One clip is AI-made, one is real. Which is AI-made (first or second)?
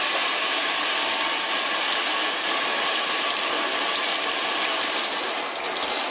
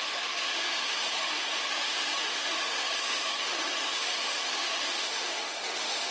second